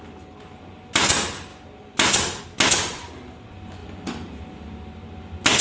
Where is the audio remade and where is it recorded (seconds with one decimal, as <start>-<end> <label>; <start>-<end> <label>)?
0.0-5.6 recorded